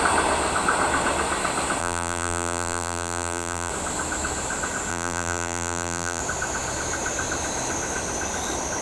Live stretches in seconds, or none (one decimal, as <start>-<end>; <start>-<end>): 0.0-1.8; 3.7-4.9; 6.2-8.8